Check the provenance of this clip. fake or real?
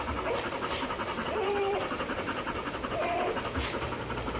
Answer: fake